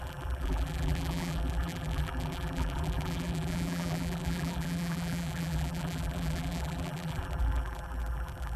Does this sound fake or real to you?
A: fake